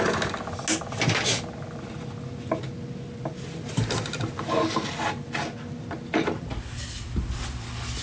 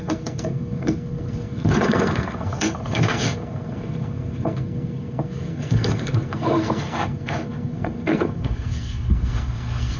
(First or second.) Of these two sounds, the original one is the first